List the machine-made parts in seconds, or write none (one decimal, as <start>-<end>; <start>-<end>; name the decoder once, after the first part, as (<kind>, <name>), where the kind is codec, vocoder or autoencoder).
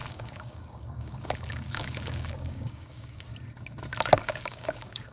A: 0.0-3.3 (codec, DAC); 4.2-5.1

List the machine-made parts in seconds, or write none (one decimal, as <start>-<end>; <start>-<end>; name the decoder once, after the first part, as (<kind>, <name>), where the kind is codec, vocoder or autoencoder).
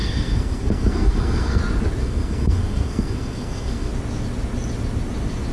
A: 0.0-1.6 (codec, SNAC); 2.0-3.9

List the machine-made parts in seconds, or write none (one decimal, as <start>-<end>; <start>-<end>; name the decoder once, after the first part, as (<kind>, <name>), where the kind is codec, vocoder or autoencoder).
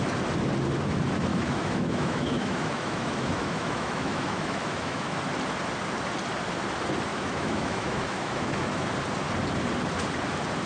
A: 1.3-5.2 (autoencoder, DAC-VAE); 7.1-8.9